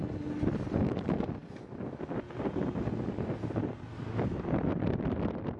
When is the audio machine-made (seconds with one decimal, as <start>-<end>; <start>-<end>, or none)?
none